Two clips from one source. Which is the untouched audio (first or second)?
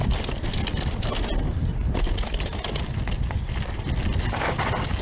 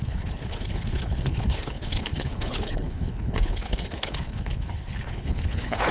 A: first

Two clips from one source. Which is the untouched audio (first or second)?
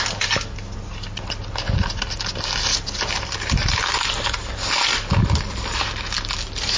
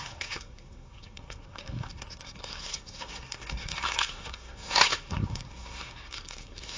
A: first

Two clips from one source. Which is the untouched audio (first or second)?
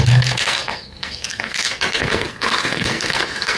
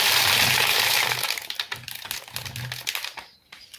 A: second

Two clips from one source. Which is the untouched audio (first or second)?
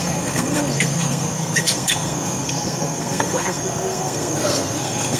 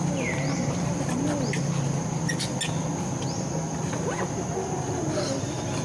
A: second